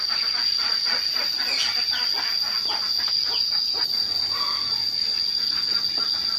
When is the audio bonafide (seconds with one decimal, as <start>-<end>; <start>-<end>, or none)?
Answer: 0.0-6.4